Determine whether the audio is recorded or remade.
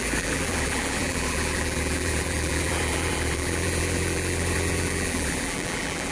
remade